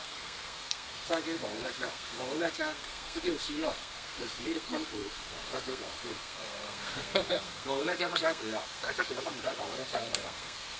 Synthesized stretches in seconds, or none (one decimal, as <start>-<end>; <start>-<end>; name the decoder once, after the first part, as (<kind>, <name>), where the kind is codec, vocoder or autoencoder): 0.0-10.8 (codec, SNAC)